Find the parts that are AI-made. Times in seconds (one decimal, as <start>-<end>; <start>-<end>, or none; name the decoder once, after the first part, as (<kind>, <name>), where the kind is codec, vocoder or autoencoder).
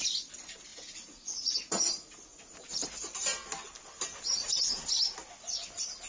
0.7-1.9 (vocoder, Vocos); 2.3-2.9